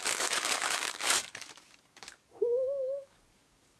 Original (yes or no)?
no